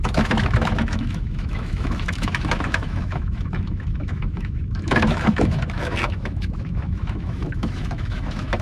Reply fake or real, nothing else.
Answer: fake